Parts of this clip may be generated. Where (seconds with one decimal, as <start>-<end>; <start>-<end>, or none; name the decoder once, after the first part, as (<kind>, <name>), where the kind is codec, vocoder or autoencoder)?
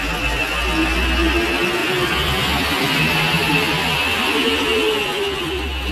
1.8-4.6 (vocoder, BigVGAN v2)